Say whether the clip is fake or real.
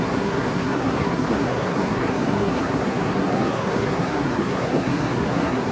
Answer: fake